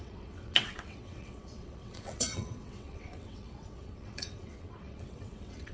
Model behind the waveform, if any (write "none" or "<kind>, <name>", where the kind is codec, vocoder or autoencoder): vocoder, WaveNeXt